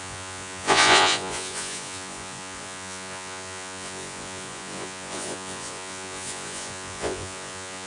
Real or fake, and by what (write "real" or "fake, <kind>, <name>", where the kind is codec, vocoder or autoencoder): fake, vocoder, Vocos